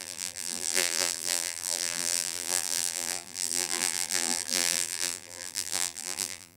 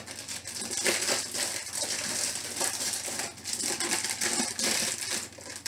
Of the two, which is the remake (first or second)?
first